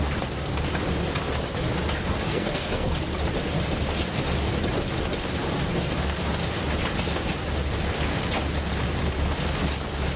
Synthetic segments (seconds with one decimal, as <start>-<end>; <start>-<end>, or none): 2.3-3.0

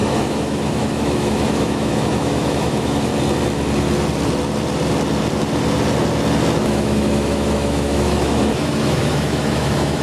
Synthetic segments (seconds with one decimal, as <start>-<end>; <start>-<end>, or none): 0.0-3.1; 6.6-10.0

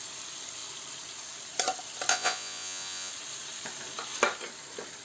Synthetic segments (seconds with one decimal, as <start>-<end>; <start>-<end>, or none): 2.1-3.1

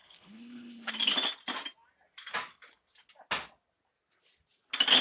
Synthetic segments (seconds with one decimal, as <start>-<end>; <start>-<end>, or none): 0.0-0.9

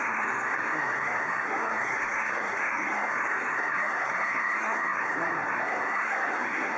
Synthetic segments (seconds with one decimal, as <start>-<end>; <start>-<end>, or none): 0.0-6.8